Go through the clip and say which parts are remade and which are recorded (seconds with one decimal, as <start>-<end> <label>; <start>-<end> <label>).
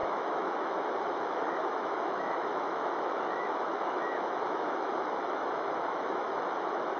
0.0-7.0 remade